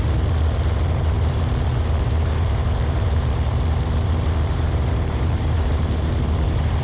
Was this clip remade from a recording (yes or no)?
yes